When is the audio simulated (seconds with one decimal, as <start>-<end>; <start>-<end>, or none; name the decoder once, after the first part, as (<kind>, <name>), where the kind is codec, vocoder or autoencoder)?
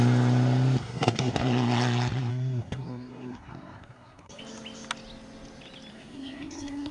0.8-1.3 (codec, SNAC); 2.3-4.4; 5.9-6.9